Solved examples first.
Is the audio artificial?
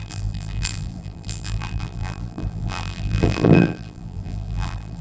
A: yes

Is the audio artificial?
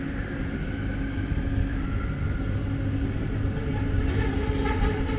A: no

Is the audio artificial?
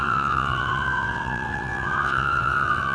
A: yes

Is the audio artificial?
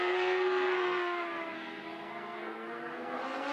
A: yes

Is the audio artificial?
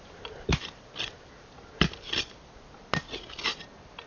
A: no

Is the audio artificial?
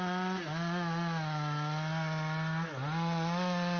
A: no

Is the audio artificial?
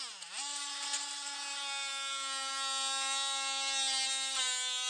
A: no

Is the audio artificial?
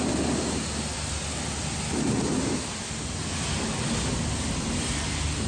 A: no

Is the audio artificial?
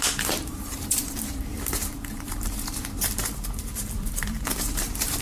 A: yes